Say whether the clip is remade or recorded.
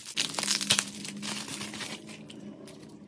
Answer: recorded